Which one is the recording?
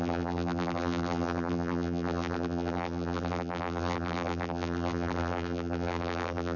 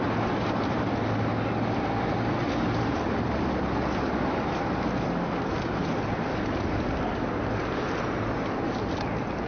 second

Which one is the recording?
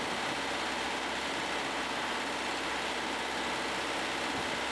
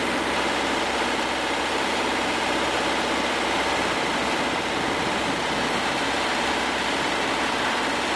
first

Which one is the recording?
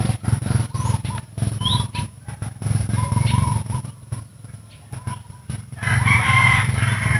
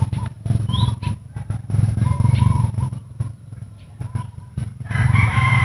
first